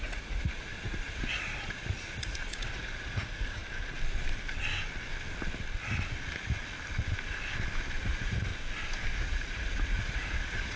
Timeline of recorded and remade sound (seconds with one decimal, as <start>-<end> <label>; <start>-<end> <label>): 0.0-3.6 remade; 3.6-8.0 recorded; 8.0-8.5 remade; 8.5-9.2 recorded; 9.2-10.8 remade

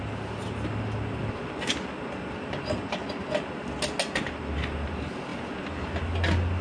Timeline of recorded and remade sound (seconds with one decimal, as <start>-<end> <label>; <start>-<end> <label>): 0.0-6.6 recorded